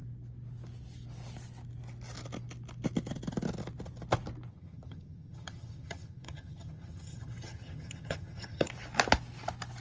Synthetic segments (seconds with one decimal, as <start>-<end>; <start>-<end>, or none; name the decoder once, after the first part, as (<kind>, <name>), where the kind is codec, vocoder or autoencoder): 4.5-8.7 (vocoder, HiFi-GAN)